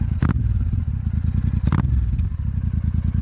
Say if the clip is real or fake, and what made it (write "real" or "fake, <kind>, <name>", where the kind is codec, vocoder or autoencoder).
real